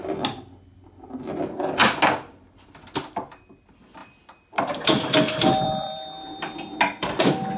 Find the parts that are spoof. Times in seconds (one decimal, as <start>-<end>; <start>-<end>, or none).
4.0-6.4